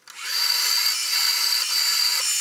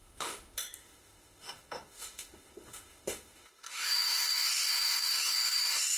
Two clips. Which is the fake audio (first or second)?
second